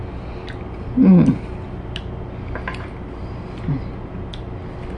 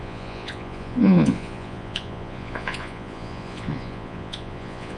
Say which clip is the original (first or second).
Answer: first